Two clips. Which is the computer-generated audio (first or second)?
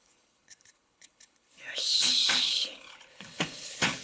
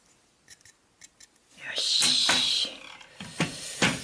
first